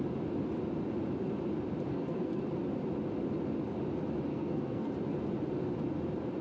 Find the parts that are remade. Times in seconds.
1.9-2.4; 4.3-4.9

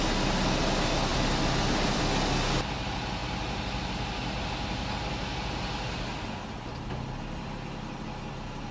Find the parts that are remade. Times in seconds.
1.1-2.0

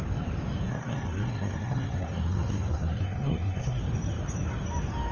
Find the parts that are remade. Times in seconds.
0.7-3.8